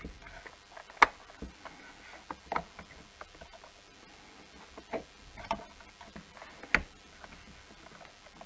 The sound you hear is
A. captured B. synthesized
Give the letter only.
A